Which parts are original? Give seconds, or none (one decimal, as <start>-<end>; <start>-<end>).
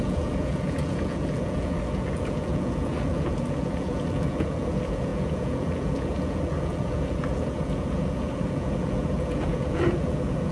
none